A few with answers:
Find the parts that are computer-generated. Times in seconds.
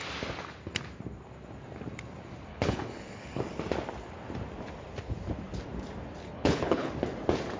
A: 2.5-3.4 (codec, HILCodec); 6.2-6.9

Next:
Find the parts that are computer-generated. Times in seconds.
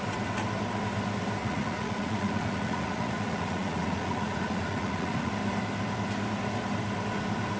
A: 1.4-5.3 (vocoder, Vocos)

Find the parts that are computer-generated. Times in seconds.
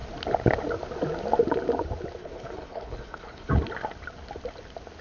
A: 2.2-3.5 (codec, HILCodec)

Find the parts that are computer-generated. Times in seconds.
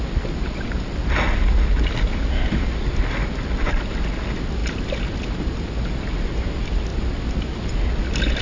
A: none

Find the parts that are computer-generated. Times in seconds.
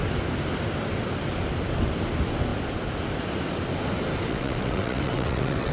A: 4.3-5.7 (vocoder, WaveNeXt)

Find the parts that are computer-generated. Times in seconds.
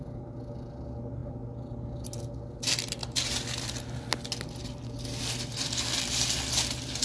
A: none